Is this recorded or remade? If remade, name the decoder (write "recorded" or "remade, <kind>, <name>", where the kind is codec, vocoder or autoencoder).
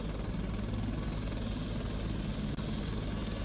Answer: recorded